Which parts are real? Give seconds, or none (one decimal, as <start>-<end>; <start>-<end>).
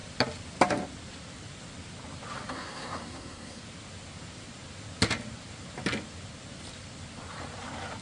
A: 0.0-2.5; 3.6-8.0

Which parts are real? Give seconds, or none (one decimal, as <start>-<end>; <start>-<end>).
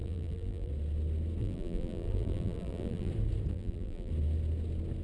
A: 0.7-1.4; 3.1-3.5; 4.1-5.0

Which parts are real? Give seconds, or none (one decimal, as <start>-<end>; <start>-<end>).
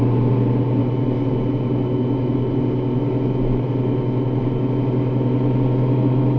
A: 0.0-6.4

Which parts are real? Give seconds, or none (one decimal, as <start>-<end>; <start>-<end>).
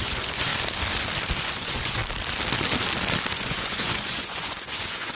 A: 0.5-1.4; 2.0-3.3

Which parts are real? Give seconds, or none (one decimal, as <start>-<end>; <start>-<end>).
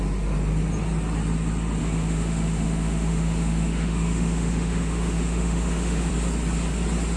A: 0.0-1.8; 6.1-7.2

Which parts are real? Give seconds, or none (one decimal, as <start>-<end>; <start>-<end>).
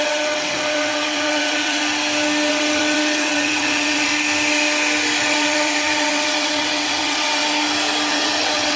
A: 1.8-2.5; 4.1-5.2; 7.4-8.1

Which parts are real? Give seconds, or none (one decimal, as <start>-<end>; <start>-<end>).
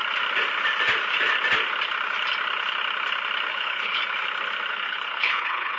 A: 0.0-3.5; 4.0-4.7